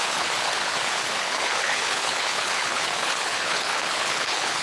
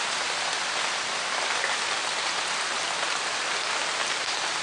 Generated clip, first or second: first